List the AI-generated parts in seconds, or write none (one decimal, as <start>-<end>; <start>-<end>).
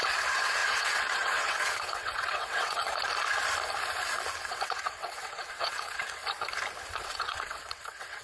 0.0-2.9; 4.5-6.2; 7.0-8.2